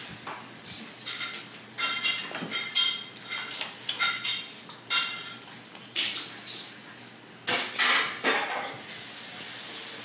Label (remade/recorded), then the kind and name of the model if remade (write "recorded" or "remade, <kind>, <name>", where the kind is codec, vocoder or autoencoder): recorded